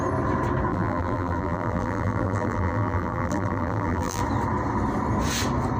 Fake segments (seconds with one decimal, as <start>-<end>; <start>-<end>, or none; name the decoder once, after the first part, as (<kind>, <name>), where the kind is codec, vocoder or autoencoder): 0.7-4.2 (vocoder, BigVGAN v2)